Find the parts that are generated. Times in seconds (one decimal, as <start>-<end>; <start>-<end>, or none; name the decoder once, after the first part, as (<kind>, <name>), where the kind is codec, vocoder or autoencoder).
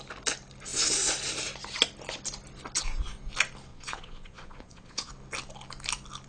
3.7-5.1 (vocoder, Vocos)